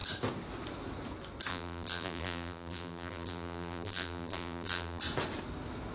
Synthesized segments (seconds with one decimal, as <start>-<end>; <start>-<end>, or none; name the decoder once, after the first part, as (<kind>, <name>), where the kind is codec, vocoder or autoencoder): 1.5-5.0 (vocoder, BigVGAN v2)